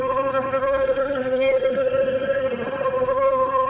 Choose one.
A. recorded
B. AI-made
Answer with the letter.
B